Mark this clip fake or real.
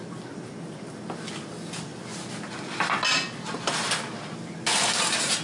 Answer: real